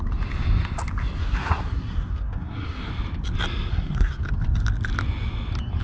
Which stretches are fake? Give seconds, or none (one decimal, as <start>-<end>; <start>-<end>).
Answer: 1.2-2.9; 3.7-4.2